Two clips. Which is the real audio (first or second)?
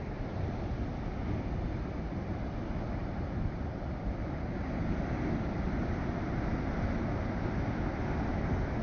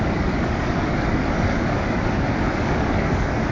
first